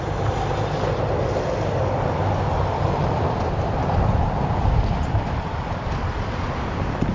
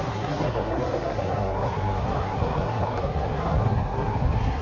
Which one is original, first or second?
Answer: first